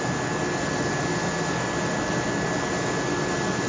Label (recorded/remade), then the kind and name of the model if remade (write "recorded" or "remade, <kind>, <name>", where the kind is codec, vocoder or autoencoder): recorded